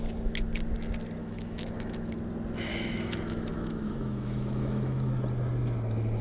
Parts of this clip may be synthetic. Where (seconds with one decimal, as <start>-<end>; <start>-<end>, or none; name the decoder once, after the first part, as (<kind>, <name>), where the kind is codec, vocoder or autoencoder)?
1.2-2.1 (autoencoder, DAC-VAE); 2.7-5.1